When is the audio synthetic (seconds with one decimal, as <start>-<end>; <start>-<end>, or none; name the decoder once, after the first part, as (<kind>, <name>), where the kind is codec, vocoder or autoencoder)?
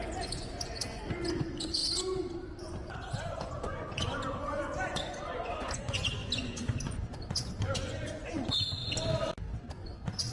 0.0-1.8 (vocoder, Vocos); 2.6-8.8; 9.6-10.3